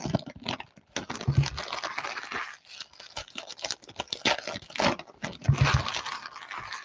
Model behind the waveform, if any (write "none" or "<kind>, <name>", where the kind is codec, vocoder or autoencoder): none